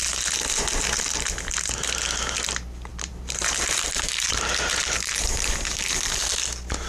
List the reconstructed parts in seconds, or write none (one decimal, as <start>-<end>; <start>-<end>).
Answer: 2.9-6.1